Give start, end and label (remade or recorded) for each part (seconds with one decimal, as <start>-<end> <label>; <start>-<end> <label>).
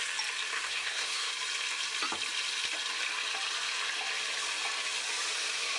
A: 0.0-0.5 recorded; 0.5-1.3 remade; 1.3-5.8 recorded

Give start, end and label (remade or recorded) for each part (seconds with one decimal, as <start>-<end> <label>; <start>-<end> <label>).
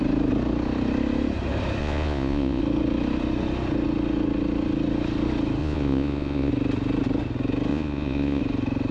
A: 0.0-1.8 recorded; 1.8-2.6 remade; 2.6-5.6 recorded; 5.6-6.5 remade; 6.5-7.7 recorded; 7.7-8.4 remade; 8.4-8.9 recorded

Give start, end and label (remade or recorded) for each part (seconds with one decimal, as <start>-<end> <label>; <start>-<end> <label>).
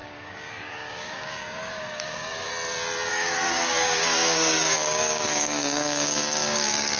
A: 0.0-2.5 remade; 2.5-3.1 recorded; 3.1-7.0 remade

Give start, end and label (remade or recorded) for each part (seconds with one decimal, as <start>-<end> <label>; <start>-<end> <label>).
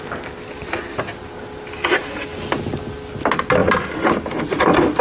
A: 0.0-0.6 recorded; 0.6-2.0 remade; 2.0-5.0 recorded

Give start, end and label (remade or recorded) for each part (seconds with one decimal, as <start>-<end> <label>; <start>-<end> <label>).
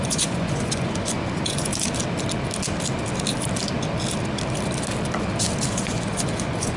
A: 0.0-1.7 remade; 1.7-5.7 recorded; 5.7-6.8 remade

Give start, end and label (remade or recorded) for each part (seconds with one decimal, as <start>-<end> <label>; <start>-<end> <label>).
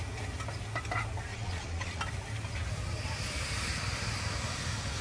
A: 0.0-1.3 recorded; 1.3-2.0 remade; 2.0-5.0 recorded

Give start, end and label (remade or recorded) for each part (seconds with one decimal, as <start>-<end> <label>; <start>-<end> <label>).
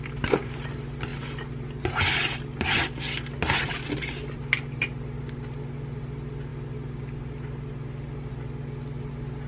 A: 0.0-9.5 recorded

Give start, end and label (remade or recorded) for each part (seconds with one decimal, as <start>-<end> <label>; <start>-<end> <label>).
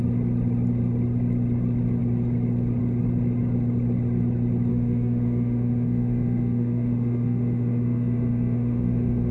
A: 0.0-4.7 recorded; 4.7-9.3 remade